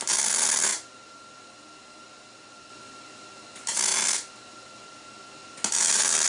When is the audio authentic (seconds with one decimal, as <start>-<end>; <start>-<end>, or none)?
0.0-6.3